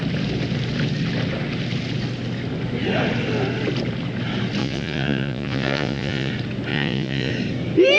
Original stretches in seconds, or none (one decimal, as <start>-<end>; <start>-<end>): 0.0-4.6; 6.3-6.7; 7.3-8.0